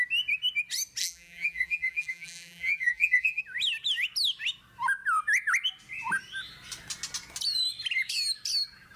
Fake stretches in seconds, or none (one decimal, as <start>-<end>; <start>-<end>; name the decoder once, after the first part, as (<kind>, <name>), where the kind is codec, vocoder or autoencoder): 1.0-3.4 (vocoder, BigVGAN v2)